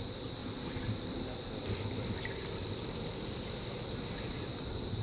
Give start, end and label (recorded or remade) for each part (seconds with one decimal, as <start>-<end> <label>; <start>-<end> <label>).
0.0-0.4 remade; 0.4-3.3 recorded; 3.3-5.0 remade